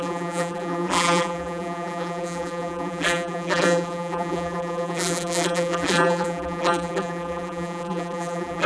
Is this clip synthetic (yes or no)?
yes